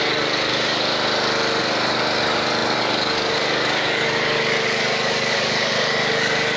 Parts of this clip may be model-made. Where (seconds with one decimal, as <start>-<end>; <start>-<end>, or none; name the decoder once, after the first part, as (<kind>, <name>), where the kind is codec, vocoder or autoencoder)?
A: 0.0-0.9 (codec, DAC); 1.6-6.6